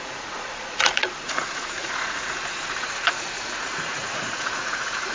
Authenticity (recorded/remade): remade